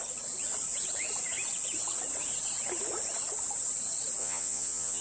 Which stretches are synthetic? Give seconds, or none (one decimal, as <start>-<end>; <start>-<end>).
4.2-5.0